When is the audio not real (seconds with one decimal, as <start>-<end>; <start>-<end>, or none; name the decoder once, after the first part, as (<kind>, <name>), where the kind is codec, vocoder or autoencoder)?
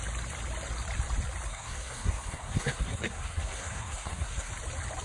1.5-4.5 (codec, SNAC)